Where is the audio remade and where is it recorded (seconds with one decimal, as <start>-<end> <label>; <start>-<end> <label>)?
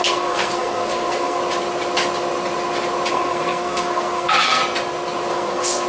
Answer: 0.0-1.4 remade; 1.4-3.1 recorded; 3.1-4.6 remade; 4.6-5.3 recorded; 5.3-5.9 remade